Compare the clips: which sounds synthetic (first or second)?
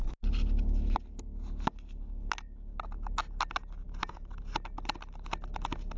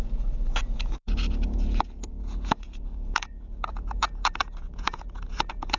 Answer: second